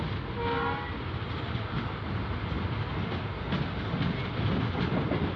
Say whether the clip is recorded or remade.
recorded